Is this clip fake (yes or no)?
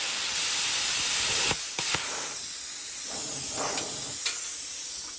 no